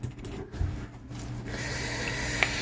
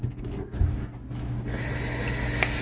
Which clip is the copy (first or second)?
first